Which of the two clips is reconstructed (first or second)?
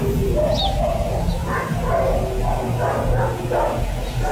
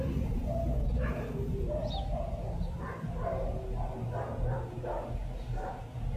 second